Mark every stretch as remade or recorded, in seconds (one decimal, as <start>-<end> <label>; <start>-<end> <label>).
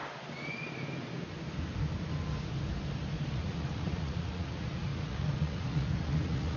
0.0-3.3 recorded; 3.3-6.6 remade